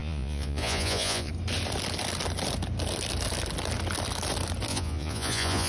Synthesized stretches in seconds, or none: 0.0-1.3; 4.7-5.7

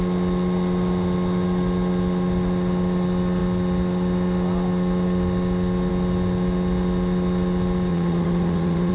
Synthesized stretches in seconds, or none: 7.9-8.9

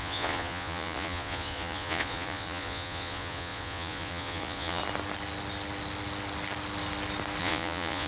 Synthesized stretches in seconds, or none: 0.0-4.8; 7.4-8.1

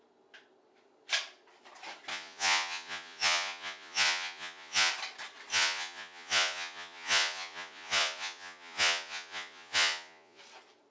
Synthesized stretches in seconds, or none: 2.1-4.9; 5.5-10.4

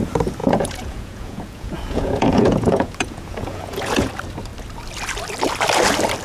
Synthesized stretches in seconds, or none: 0.4-4.1

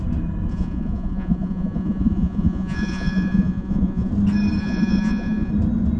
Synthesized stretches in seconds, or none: 0.5-4.1; 4.6-5.5

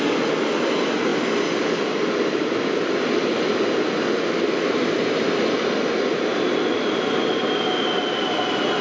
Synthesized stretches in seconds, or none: none

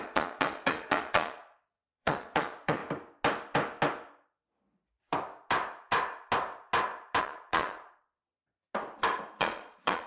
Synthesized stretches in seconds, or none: 0.0-2.8; 7.2-8.6; 9.4-10.1